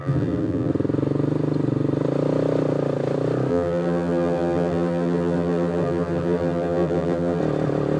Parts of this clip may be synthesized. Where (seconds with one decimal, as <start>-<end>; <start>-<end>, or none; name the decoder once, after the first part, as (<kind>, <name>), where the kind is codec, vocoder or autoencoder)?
0.0-0.7 (vocoder, BigVGAN v2); 3.5-7.4